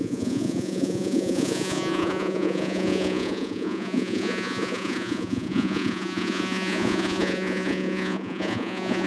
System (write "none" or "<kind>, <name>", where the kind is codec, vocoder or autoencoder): vocoder, Vocos